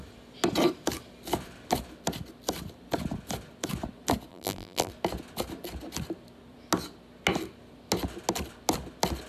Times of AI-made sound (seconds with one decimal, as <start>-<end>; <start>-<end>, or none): 4.3-4.9